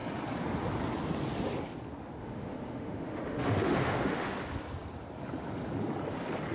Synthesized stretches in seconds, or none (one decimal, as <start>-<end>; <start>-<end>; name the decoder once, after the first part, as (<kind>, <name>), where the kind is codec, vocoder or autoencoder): 2.2-4.3 (autoencoder, DAC-VAE)